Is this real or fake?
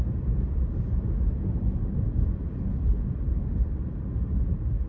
real